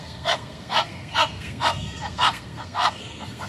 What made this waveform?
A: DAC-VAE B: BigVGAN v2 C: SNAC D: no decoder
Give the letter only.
C